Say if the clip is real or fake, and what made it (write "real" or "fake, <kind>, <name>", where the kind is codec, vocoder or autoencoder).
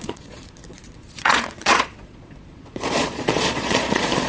fake, vocoder, Vocos